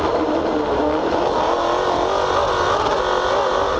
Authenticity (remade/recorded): recorded